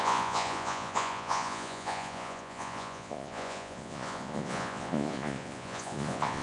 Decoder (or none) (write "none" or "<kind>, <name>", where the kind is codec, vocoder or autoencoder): vocoder, Vocos